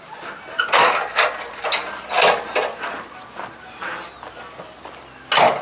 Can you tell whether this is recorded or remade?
recorded